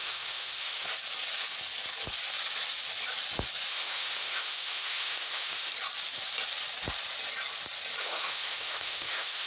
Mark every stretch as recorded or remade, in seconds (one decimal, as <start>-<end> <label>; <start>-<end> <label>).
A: 0.0-0.9 remade; 0.9-3.7 recorded; 3.7-5.7 remade; 5.7-8.0 recorded; 8.0-9.5 remade